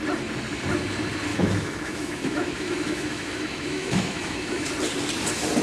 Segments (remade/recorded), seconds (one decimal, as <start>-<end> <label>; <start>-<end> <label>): 0.0-1.3 recorded; 1.3-4.7 remade; 4.7-5.6 recorded